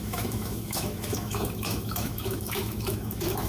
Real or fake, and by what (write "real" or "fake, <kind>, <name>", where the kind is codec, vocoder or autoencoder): fake, autoencoder, DAC-VAE